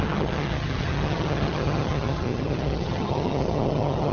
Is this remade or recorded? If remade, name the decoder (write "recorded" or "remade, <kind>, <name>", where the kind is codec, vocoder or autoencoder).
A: remade, vocoder, HiFi-GAN